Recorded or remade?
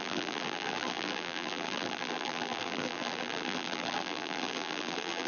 remade